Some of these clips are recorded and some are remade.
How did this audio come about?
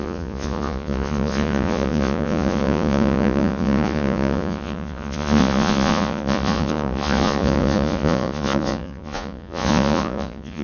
remade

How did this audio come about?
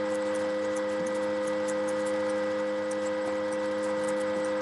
recorded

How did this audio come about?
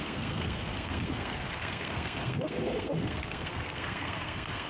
remade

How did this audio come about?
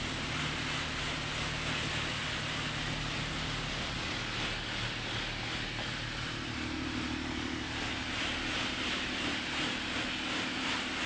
recorded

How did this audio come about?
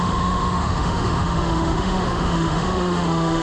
remade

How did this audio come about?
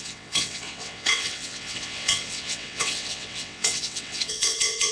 remade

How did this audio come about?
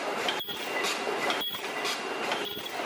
recorded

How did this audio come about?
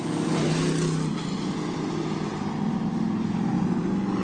recorded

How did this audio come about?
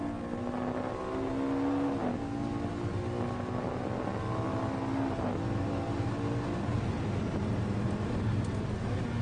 recorded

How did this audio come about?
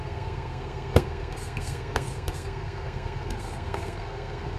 remade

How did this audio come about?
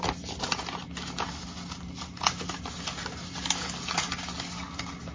recorded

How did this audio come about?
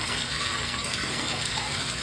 remade